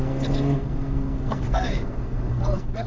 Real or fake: fake